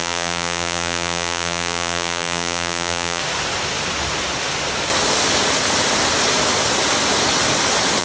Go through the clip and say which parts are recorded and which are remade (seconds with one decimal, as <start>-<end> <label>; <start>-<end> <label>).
0.0-3.2 remade; 3.2-8.0 recorded